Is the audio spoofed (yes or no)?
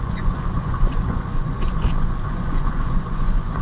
yes